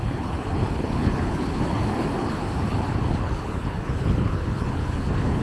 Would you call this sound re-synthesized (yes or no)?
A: yes